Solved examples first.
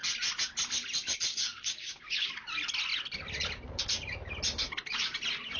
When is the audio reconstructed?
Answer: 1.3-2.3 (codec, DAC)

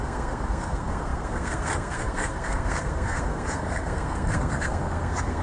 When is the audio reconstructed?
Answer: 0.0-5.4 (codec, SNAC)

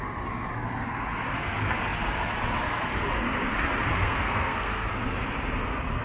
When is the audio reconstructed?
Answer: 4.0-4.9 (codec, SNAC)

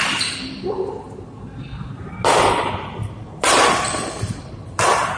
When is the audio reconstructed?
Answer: none

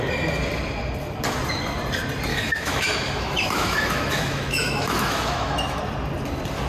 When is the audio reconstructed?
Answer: 2.3-5.8 (autoencoder, DAC-VAE)